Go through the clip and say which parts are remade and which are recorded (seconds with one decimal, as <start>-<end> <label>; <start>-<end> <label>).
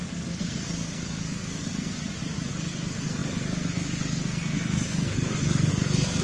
0.0-2.0 remade; 2.0-2.5 recorded; 2.5-6.2 remade